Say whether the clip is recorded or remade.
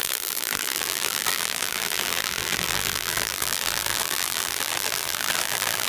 remade